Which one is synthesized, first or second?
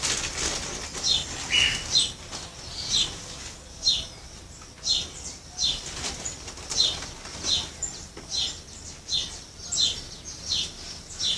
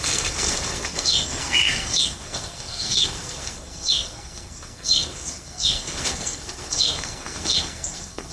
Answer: second